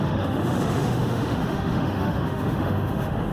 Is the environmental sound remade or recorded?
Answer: remade